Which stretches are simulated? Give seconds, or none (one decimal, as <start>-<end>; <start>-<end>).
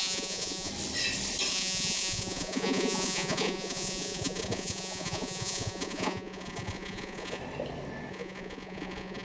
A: 0.0-0.7; 1.5-7.4; 8.1-9.2